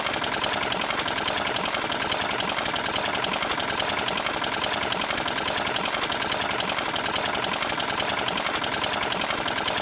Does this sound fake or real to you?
real